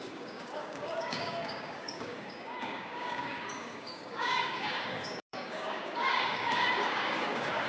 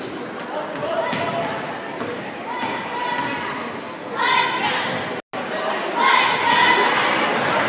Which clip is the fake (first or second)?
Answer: first